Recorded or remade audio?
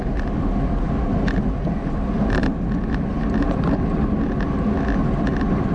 recorded